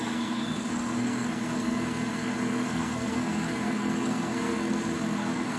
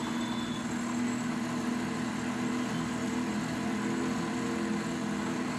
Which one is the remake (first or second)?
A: first